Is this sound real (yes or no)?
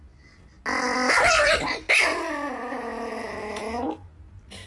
yes